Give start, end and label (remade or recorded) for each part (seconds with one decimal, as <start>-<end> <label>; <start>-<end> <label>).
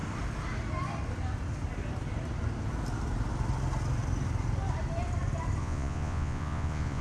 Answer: 0.0-5.6 recorded; 5.6-7.0 remade